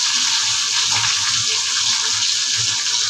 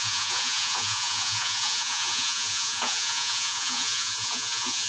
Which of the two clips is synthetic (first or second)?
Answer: second